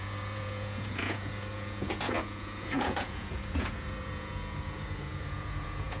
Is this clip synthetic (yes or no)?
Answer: yes